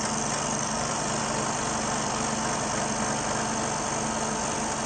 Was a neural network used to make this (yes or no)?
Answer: no